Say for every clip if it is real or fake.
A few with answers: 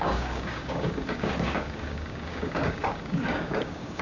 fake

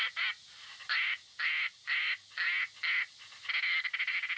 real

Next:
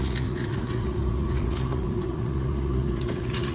fake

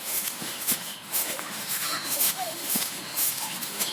fake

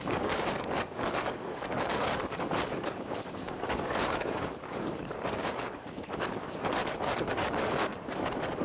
fake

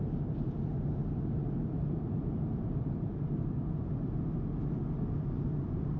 real